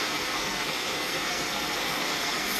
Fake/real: fake